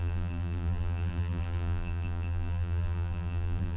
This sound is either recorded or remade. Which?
remade